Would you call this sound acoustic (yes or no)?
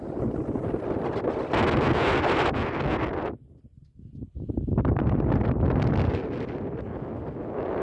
yes